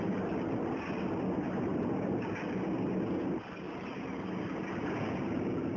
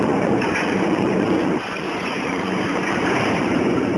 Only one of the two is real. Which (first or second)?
first